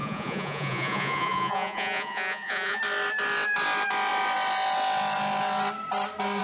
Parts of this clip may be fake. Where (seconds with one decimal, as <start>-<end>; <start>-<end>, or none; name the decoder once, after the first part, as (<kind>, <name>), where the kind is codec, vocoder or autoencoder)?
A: 0.0-2.8 (vocoder, Vocos)